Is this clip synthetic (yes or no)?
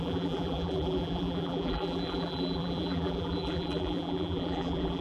yes